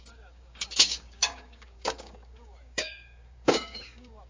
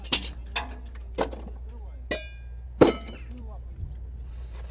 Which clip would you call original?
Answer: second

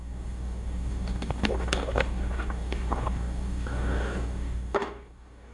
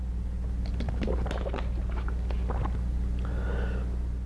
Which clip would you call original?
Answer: second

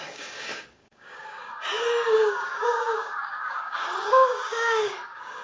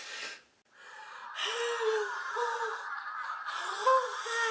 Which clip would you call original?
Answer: second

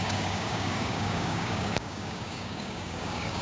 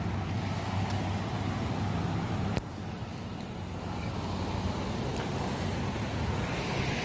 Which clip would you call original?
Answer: second